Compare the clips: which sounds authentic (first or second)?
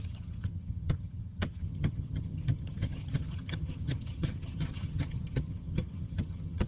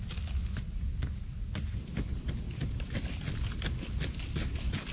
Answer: second